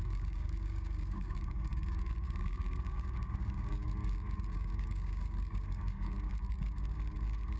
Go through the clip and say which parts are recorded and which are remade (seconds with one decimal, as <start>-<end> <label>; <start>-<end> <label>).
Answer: 0.0-7.6 remade